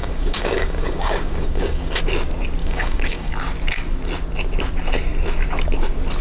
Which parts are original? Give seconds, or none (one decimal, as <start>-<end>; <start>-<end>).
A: 2.0-2.6; 3.3-6.2

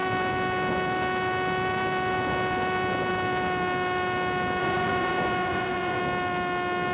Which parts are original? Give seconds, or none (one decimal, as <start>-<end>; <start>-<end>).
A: 0.0-4.6; 6.0-6.9

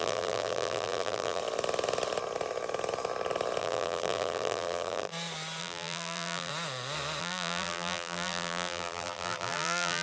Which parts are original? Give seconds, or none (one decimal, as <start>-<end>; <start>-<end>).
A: 1.4-3.6; 5.1-5.6; 6.5-7.2

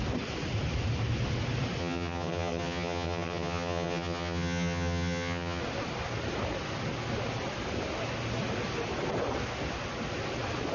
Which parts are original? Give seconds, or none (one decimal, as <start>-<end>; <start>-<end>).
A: 0.0-1.8; 5.6-10.7

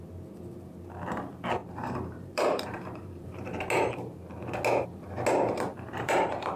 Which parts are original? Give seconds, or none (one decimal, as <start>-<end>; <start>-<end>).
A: 0.0-1.6; 3.6-5.7